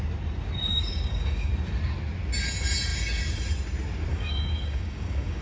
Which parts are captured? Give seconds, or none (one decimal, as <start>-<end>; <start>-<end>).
0.0-0.7; 1.5-4.1